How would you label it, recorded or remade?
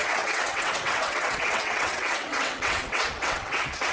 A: remade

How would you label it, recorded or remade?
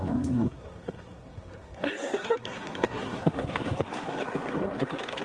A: remade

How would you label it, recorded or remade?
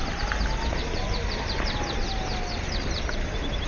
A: recorded